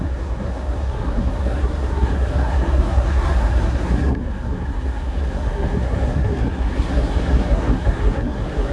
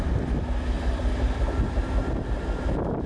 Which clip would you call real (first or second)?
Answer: second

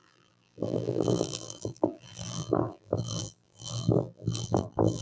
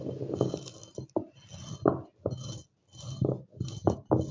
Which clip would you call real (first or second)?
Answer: second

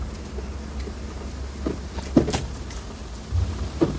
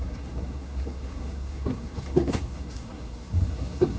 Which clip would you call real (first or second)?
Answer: first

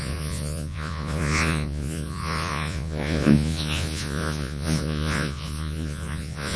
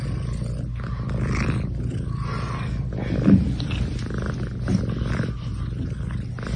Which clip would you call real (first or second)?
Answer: second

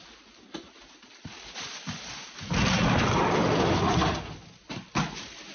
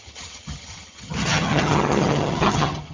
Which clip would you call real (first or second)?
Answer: first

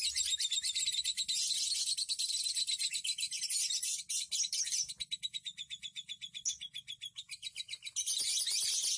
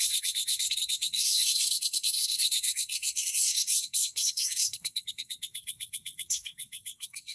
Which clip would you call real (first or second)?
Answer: first